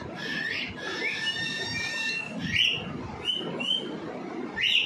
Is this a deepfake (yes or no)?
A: no